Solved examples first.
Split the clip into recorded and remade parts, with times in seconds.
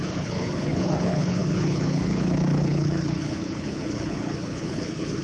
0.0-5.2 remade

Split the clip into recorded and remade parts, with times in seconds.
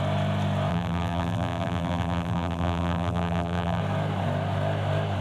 0.0-0.7 recorded; 0.7-3.8 remade; 3.8-5.2 recorded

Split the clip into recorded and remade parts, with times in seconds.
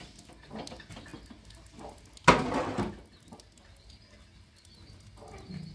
0.0-5.7 recorded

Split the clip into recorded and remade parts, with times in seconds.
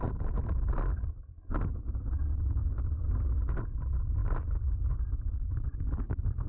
0.0-0.4 remade; 0.4-3.8 recorded; 3.8-4.2 remade; 4.2-5.9 recorded; 5.9-6.5 remade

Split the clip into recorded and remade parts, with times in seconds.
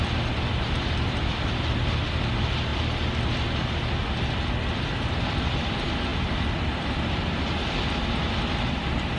0.0-2.7 remade; 2.7-5.1 recorded; 5.1-9.2 remade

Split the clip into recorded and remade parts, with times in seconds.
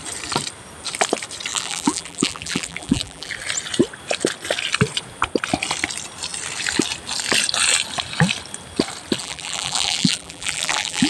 0.0-1.5 recorded; 1.5-3.3 remade; 3.3-9.2 recorded; 9.2-11.1 remade